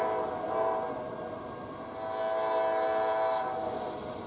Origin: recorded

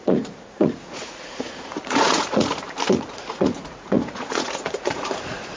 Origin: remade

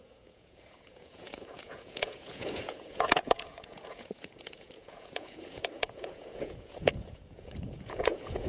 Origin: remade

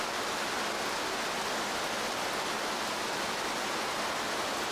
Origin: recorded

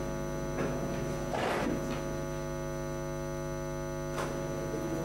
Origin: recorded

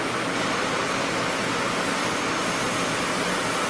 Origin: recorded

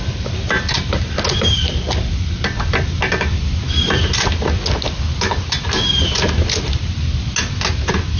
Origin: recorded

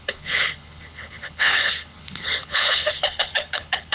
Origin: remade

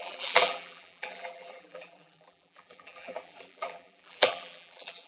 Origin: remade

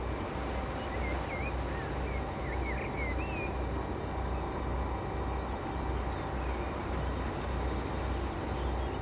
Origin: recorded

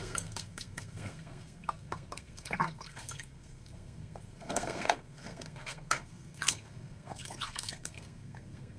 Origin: remade